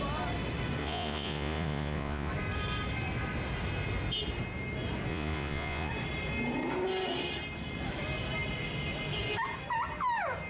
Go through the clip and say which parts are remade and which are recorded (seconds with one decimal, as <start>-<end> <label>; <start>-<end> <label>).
0.0-0.8 recorded; 0.8-2.3 remade; 2.3-5.1 recorded; 5.1-5.9 remade; 5.9-10.5 recorded